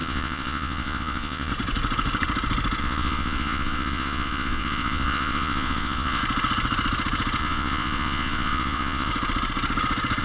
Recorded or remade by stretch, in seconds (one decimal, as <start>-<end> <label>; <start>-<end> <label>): 0.0-1.5 remade; 1.5-2.8 recorded; 2.8-6.2 remade; 6.2-7.4 recorded; 7.4-9.1 remade; 9.1-10.2 recorded